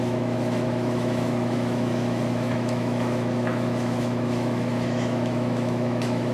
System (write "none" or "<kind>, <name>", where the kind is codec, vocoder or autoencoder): autoencoder, DAC-VAE